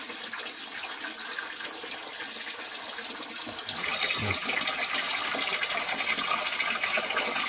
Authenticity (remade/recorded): recorded